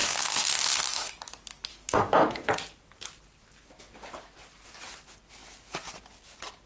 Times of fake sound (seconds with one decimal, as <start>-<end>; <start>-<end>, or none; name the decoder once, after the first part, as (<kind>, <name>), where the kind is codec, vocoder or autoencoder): 0.0-1.1 (autoencoder, DAC-VAE); 1.7-2.5